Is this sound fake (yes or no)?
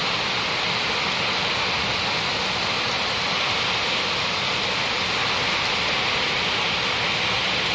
no